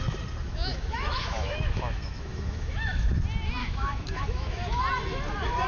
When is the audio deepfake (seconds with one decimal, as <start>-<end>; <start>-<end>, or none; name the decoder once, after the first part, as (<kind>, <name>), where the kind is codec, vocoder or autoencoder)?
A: 0.7-3.1 (autoencoder, DAC-VAE); 3.6-4.8